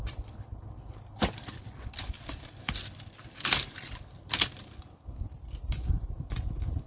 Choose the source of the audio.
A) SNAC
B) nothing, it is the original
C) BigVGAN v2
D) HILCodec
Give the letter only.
C